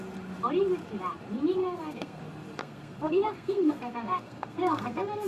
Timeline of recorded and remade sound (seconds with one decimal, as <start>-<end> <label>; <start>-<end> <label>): 0.0-1.6 recorded; 1.6-2.2 remade; 2.2-2.6 recorded; 2.6-5.3 remade